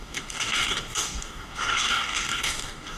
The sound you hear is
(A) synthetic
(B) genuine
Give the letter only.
A